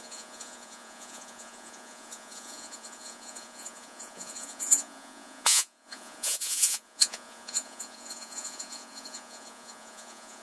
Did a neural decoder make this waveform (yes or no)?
yes